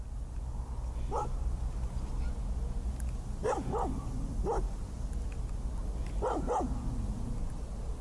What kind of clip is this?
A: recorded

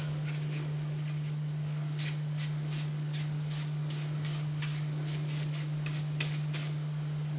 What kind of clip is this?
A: remade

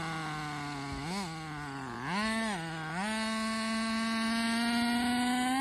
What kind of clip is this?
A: recorded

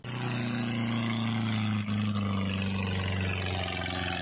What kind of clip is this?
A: recorded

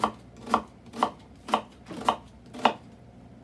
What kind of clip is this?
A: recorded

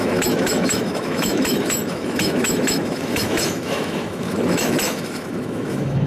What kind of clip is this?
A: remade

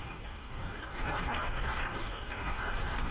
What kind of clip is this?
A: remade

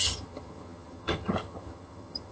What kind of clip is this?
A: remade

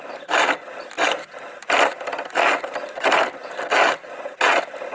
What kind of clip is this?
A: recorded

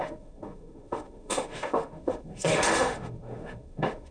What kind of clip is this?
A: remade